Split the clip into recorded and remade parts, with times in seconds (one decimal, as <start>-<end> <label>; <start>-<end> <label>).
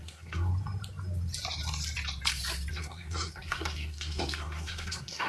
0.0-0.5 remade; 0.5-2.7 recorded; 2.7-5.3 remade